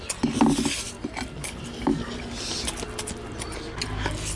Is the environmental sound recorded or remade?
recorded